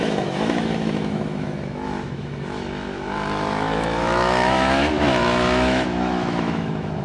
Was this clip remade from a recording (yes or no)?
yes